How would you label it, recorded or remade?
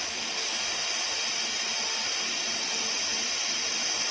recorded